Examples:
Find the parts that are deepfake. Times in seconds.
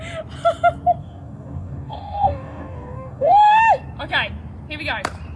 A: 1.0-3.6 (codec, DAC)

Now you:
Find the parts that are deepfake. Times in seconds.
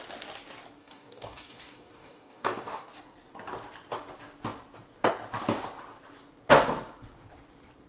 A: 0.8-2.9 (codec, DAC)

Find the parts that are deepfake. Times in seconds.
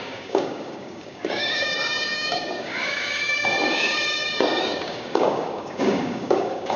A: 0.0-6.8 (codec, DAC)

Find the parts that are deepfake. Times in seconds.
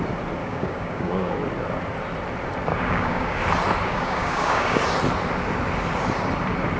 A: 0.4-1.3 (codec, DAC); 2.7-3.4; 3.9-4.8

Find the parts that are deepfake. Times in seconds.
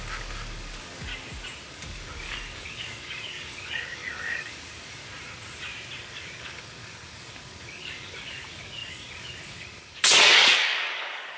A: 0.0-1.1 (codec, DAC); 1.7-5.0; 6.0-11.4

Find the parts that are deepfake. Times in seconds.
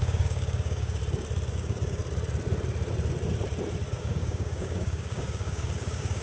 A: 0.0-1.0 (codec, DAC); 1.5-2.0; 3.9-6.2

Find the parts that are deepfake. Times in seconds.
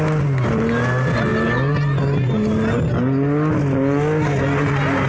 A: none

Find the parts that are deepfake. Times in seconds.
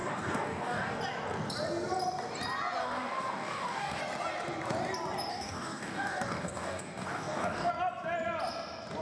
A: 0.0-1.0 (codec, DAC); 2.8-4.0; 5.3-7.7